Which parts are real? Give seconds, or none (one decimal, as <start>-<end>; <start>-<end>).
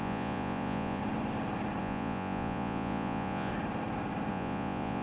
1.0-1.8; 3.5-4.3